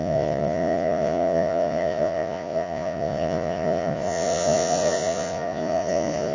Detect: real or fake fake